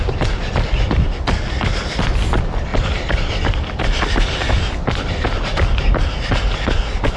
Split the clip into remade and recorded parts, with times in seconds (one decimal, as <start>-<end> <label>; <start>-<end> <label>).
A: 0.0-2.7 recorded; 2.7-4.5 remade; 4.5-7.2 recorded